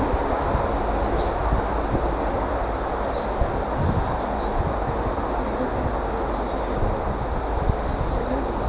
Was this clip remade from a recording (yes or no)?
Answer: no